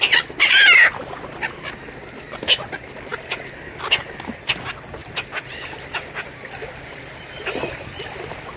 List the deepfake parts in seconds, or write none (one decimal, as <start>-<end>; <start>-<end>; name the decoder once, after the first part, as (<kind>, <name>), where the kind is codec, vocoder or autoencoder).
none